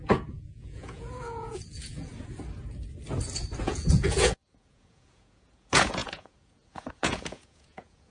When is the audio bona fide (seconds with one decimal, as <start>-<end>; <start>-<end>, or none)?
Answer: 2.1-3.6